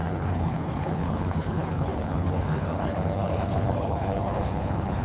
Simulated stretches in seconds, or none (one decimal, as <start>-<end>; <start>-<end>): 0.0-5.0